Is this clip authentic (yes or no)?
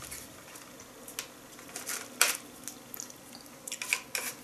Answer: yes